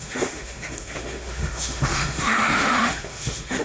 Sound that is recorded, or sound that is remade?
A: remade